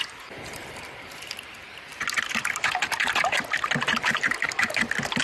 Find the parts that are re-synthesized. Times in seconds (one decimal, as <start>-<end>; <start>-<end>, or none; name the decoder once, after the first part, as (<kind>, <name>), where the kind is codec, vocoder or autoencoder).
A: 0.0-1.9 (vocoder, BigVGAN v2)